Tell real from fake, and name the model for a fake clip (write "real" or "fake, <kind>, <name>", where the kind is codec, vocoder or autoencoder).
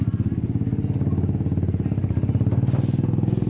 real